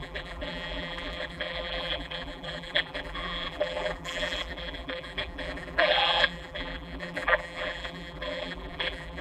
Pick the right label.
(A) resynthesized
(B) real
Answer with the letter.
A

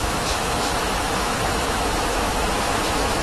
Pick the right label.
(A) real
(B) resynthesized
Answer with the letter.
B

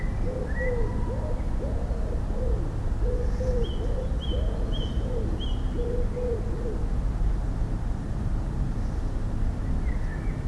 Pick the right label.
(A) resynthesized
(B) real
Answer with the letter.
B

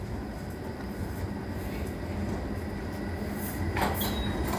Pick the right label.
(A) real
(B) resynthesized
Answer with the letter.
A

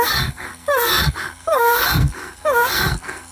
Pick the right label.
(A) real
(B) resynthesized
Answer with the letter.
B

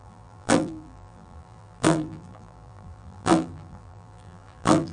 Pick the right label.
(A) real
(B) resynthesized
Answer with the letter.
B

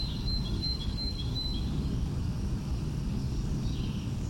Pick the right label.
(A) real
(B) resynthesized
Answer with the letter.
B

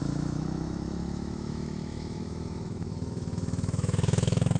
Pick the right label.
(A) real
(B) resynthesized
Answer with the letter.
B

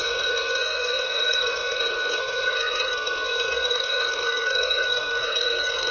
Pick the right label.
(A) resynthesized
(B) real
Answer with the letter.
A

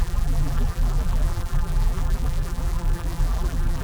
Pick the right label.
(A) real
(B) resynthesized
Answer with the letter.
B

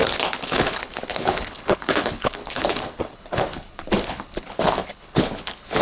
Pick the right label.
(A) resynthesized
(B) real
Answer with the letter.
A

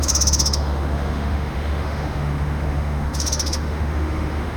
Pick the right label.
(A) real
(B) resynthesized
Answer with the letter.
B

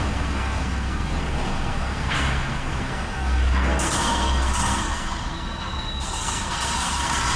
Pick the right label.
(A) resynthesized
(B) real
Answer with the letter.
A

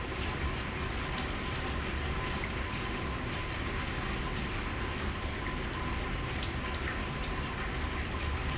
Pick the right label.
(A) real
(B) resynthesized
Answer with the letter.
A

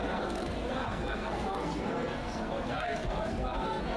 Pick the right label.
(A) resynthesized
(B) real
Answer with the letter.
A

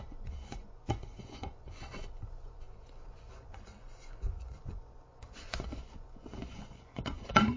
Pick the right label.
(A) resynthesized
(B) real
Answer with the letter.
A